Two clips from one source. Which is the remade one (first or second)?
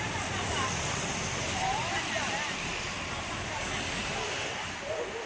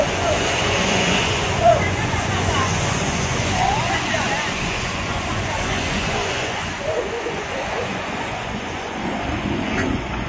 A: second